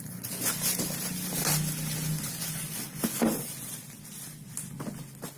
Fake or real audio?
real